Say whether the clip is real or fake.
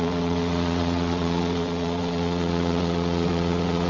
fake